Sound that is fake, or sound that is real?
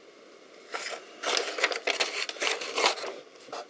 real